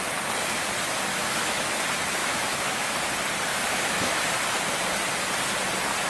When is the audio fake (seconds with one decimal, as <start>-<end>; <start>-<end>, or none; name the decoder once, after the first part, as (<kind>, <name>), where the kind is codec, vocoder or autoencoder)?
1.1-1.7 (autoencoder, DAC-VAE); 2.2-2.9; 3.5-4.3